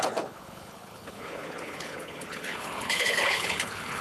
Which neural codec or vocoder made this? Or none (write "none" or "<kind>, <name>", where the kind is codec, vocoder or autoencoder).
codec, HILCodec